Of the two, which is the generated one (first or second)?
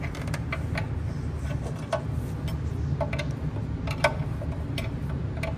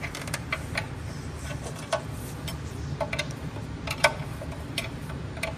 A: second